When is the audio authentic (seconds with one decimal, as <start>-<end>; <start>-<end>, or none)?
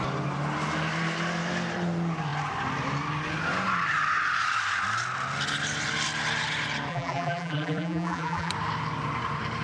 0.0-6.9; 8.5-9.6